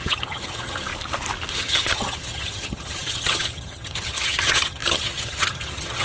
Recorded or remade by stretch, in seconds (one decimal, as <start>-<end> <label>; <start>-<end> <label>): 0.0-0.9 remade; 0.9-1.5 recorded; 1.5-6.0 remade